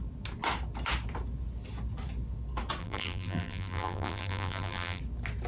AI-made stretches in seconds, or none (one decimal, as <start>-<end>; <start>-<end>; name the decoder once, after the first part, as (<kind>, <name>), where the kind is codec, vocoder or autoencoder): 2.8-5.0 (vocoder, BigVGAN v2)